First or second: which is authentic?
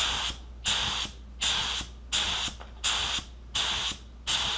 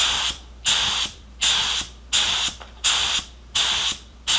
first